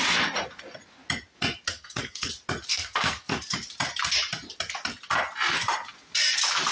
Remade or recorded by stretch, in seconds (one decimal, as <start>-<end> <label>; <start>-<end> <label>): 0.0-1.7 recorded; 1.7-2.3 remade; 2.3-2.7 recorded; 2.7-3.4 remade; 3.4-6.7 recorded